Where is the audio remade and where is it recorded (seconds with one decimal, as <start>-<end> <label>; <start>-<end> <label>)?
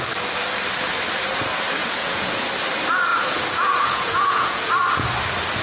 0.0-1.8 recorded; 1.8-2.4 remade; 2.4-3.1 recorded; 3.1-4.7 remade; 4.7-5.6 recorded